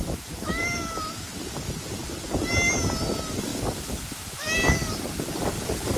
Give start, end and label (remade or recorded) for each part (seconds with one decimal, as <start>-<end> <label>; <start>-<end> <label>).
0.0-0.6 remade; 0.6-6.0 recorded